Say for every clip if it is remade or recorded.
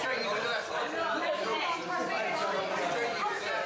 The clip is recorded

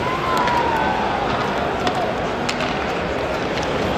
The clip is recorded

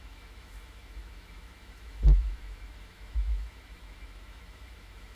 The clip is remade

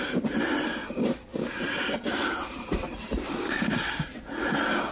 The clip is recorded